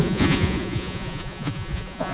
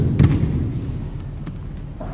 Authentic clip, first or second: second